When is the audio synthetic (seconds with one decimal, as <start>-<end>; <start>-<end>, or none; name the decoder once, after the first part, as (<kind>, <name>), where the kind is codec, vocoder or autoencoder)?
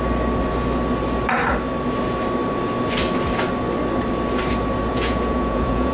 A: 4.9-5.9 (vocoder, Vocos)